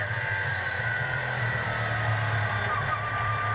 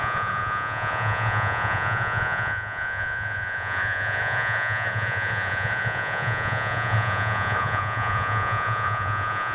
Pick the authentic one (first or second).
first